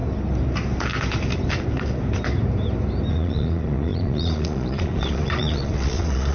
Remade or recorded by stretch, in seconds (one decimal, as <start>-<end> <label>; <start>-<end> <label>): 0.0-3.1 recorded; 3.1-6.3 remade